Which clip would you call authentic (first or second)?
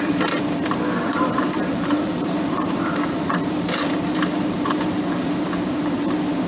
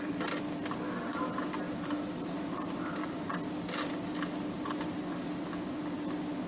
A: second